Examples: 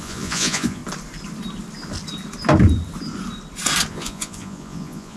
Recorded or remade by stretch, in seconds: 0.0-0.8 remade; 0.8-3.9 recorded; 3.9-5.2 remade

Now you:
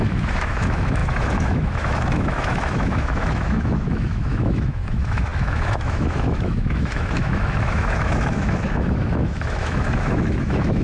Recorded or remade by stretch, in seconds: 0.0-10.8 remade

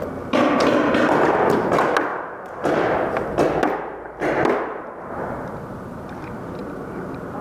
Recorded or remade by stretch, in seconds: 0.0-7.4 recorded

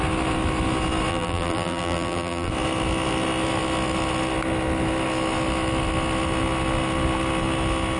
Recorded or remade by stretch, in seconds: 0.0-1.1 recorded; 1.1-2.5 remade; 2.5-8.0 recorded

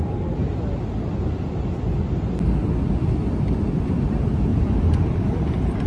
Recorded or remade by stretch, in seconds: 0.0-0.4 remade; 0.4-3.7 recorded; 3.7-4.5 remade; 4.5-5.1 recorded; 5.1-5.9 remade

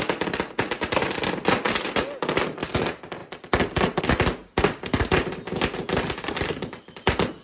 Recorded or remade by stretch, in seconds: 0.0-7.4 recorded